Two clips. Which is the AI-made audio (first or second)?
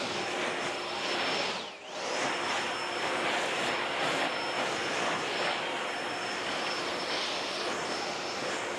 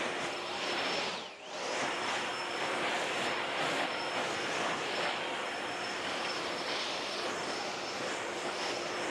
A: second